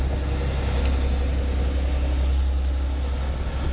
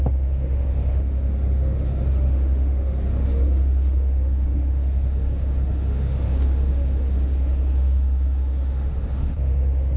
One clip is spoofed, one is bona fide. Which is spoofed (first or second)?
second